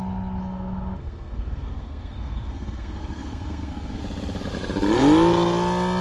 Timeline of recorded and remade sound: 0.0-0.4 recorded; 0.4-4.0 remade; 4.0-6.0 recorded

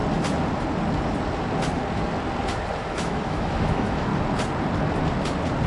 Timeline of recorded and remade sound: 0.0-2.9 recorded; 2.9-4.1 remade; 4.1-5.7 recorded

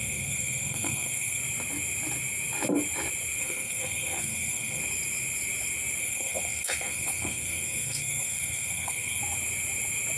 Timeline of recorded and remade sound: 0.0-1.4 remade; 1.4-3.4 recorded; 3.4-4.8 remade; 4.8-6.0 recorded; 6.0-9.2 remade; 9.2-10.2 recorded

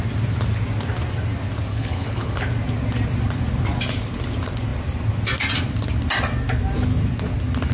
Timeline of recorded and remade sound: 0.0-1.7 recorded; 1.7-2.4 remade; 2.4-7.7 recorded